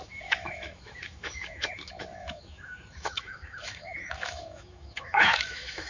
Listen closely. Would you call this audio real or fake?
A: fake